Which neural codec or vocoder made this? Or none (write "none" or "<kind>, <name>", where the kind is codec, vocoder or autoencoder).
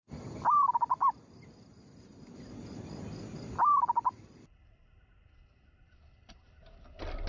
none